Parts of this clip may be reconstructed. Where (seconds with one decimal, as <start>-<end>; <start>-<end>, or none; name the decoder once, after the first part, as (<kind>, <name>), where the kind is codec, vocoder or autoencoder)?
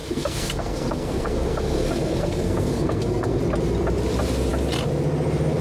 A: 0.0-3.4 (codec, SNAC)